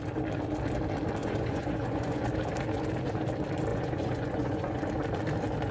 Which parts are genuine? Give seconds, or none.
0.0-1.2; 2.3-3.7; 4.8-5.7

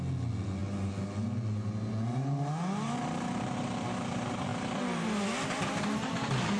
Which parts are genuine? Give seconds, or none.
0.0-6.6

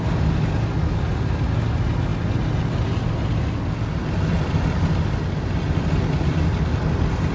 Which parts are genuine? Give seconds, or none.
0.0-7.3

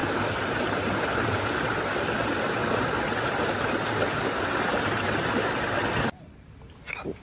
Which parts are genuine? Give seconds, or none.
0.0-7.2